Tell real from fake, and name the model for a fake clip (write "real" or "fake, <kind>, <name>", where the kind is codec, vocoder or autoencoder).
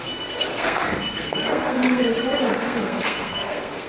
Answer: fake, codec, SNAC